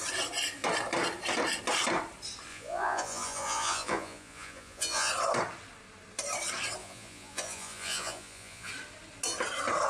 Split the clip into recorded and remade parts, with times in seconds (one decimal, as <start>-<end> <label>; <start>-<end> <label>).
0.0-2.5 recorded; 2.5-5.1 remade; 5.1-6.8 recorded; 6.8-8.7 remade; 8.7-9.9 recorded